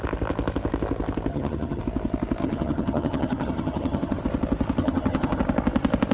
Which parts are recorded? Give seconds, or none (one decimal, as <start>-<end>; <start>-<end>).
0.0-1.3; 1.8-2.4; 4.2-4.8; 5.4-6.1